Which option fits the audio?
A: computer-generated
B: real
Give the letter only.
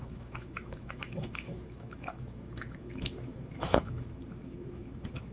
A